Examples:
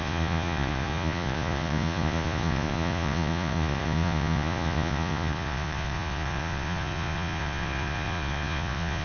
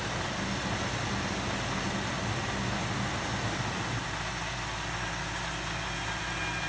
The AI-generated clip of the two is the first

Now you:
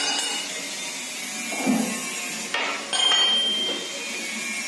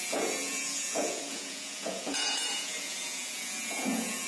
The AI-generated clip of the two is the second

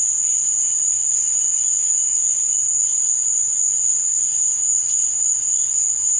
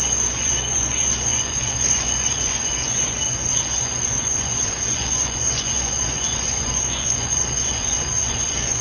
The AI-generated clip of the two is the second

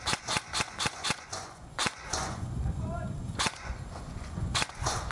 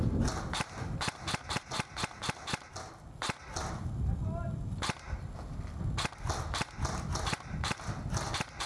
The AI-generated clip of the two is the first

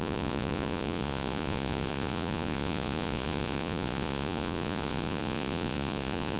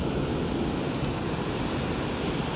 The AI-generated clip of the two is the first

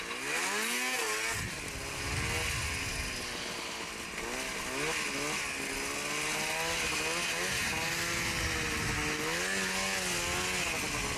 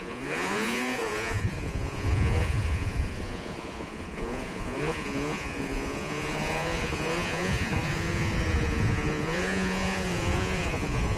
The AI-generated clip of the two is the second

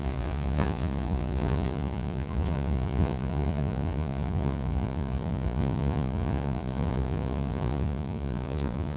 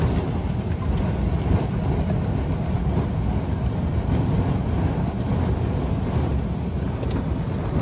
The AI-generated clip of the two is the first